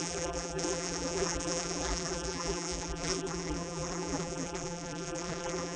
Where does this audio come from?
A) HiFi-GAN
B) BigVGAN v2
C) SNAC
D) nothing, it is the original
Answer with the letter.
B